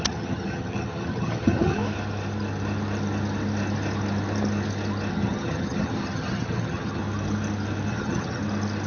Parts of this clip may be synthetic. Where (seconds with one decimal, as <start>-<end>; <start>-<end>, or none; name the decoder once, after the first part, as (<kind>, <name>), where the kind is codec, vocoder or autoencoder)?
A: 0.0-1.8 (vocoder, HiFi-GAN); 5.1-7.0; 7.9-8.4